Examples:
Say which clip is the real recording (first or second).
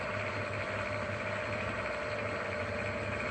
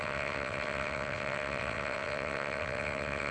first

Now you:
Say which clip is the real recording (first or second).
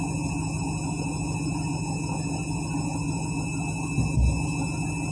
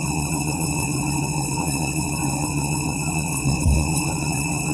first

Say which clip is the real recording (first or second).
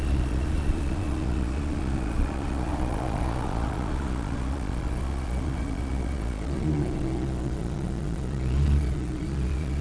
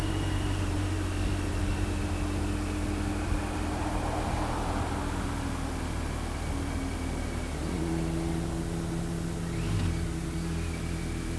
second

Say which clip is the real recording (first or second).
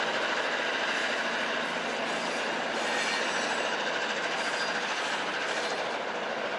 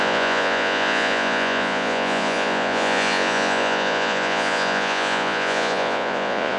first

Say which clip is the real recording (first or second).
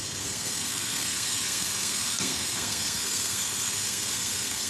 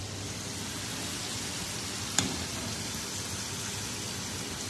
second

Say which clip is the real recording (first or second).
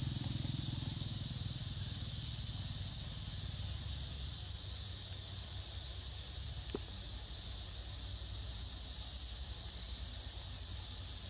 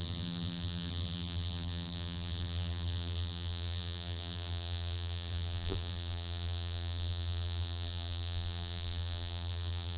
first